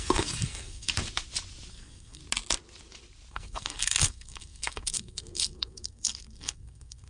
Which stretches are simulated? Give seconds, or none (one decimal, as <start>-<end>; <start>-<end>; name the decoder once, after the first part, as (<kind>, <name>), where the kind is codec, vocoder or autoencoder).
0.0-0.9 (codec, SNAC); 1.7-2.2; 3.3-7.1